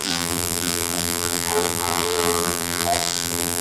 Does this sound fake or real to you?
fake